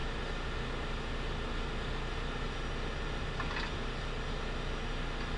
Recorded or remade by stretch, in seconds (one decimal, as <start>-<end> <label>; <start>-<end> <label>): 0.0-5.4 recorded